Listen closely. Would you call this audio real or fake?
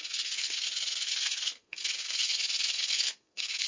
fake